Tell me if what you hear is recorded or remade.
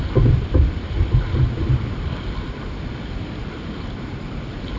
remade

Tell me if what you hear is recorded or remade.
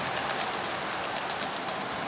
recorded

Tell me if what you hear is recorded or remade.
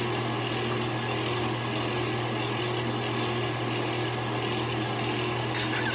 recorded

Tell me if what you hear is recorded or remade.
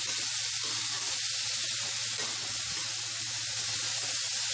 recorded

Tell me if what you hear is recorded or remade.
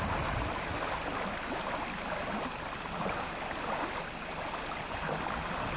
recorded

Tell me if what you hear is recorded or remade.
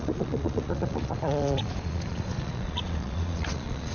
remade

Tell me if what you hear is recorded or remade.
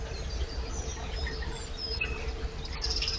recorded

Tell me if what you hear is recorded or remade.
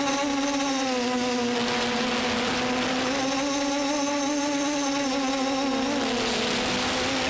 recorded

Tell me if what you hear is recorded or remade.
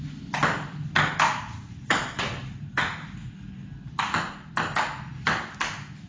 recorded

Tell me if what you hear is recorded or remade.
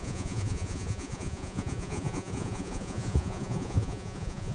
remade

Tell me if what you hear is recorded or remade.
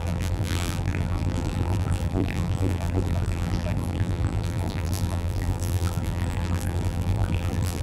remade